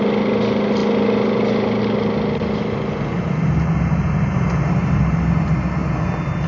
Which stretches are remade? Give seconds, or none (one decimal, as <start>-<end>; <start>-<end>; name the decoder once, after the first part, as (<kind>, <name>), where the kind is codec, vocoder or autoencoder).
none